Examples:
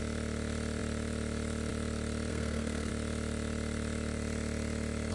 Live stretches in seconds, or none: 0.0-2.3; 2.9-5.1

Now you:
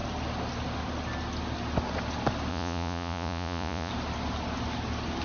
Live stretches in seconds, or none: 0.0-2.5; 3.9-5.2

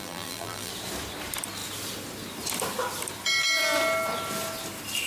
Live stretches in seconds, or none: 0.7-5.1

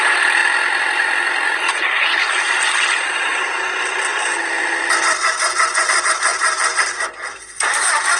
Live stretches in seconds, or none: 0.0-4.1; 4.8-6.3; 7.4-8.2

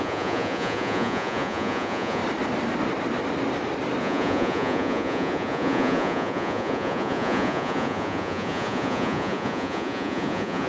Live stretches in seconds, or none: 2.2-4.0

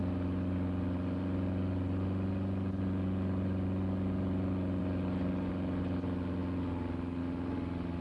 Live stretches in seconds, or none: 0.0-8.0

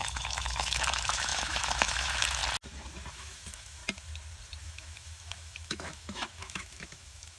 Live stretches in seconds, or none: 2.4-3.1; 3.8-4.6